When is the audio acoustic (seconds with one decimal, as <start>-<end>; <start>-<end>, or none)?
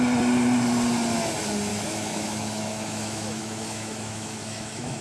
0.0-1.7